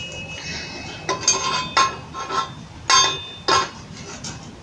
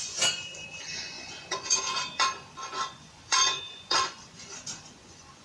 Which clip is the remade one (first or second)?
second